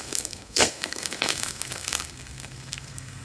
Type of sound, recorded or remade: remade